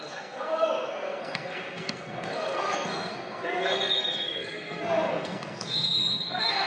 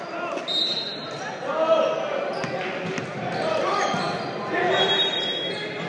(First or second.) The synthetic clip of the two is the first